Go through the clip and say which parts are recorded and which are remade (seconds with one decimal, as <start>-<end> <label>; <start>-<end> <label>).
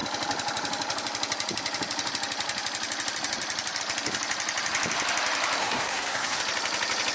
0.0-5.6 recorded; 5.6-6.4 remade; 6.4-7.1 recorded